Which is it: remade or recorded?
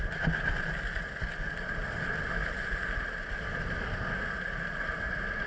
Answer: recorded